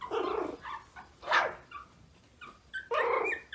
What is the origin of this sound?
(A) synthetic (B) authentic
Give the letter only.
B